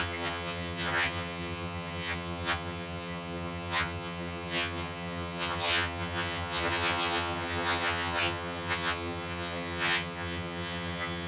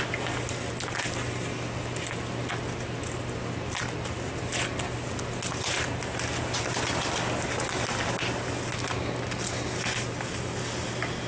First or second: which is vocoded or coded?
first